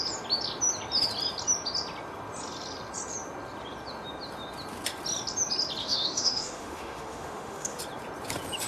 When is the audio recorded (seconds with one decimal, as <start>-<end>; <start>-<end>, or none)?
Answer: 0.0-5.8; 7.8-8.7